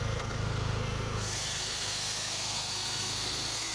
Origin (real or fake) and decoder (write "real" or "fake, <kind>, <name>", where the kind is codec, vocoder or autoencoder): fake, codec, SNAC